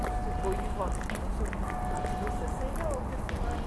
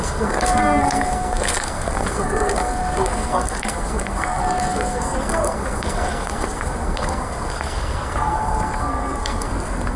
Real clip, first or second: first